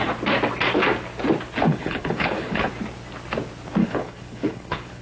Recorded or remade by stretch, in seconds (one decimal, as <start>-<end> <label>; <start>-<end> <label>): 0.0-1.7 recorded; 1.7-2.7 remade; 2.7-3.8 recorded; 3.8-5.0 remade